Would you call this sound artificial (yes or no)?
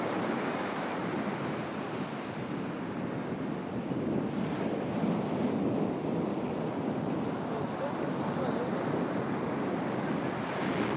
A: no